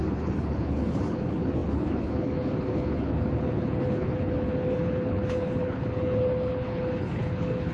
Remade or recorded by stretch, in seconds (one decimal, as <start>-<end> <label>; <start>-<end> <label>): 0.0-7.7 remade

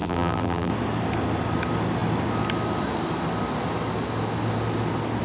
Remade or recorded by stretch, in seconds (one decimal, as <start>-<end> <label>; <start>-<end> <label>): 0.0-0.7 remade; 0.7-5.2 recorded

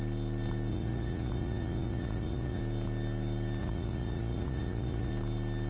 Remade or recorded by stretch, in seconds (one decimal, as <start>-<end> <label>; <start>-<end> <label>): 0.0-0.7 recorded; 0.7-2.6 remade; 2.6-3.6 recorded; 3.6-5.1 remade; 5.1-5.7 recorded

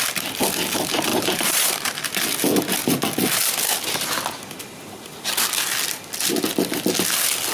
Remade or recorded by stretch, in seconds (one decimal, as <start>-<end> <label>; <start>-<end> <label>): 0.0-1.1 recorded; 1.1-1.9 remade; 1.9-7.5 recorded